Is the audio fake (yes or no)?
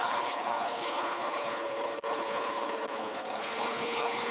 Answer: yes